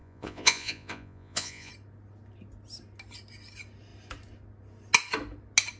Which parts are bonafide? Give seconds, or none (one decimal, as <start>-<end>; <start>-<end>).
1.7-5.8